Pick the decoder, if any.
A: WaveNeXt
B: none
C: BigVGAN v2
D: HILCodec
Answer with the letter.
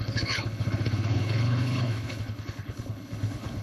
D